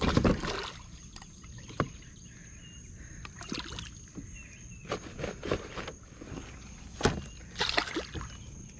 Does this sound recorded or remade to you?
recorded